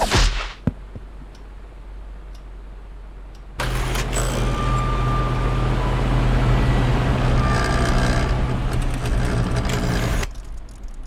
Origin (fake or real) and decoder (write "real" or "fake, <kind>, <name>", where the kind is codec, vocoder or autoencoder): real